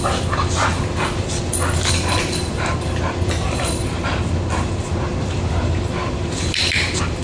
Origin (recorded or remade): remade